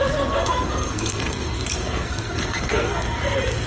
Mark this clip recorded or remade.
remade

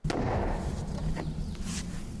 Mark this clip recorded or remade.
recorded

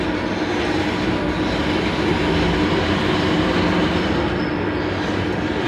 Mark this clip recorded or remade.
recorded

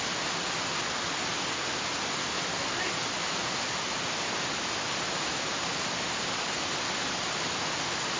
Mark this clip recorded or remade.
recorded